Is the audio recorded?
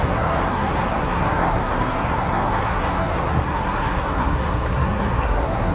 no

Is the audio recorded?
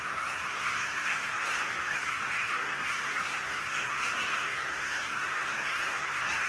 no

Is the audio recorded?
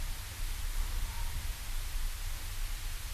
yes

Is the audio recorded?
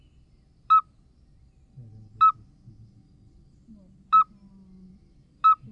yes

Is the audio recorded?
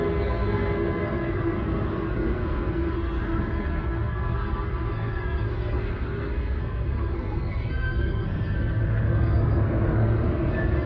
no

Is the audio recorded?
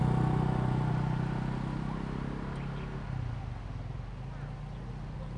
yes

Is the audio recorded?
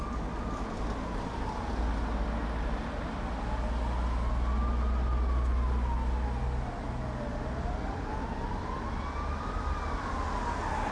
yes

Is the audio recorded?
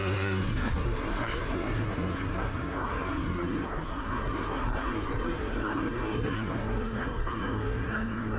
no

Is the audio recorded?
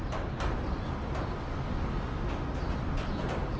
yes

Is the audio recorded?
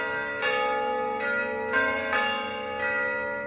yes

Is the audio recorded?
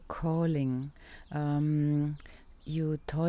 yes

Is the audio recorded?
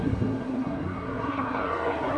no